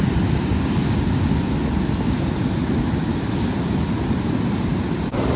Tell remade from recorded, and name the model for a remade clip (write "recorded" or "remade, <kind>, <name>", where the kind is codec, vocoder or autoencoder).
recorded